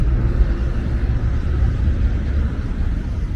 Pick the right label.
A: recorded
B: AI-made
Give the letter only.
A